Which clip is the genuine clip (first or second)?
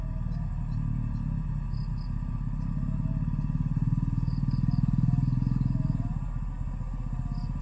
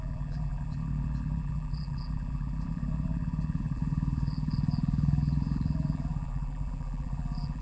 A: first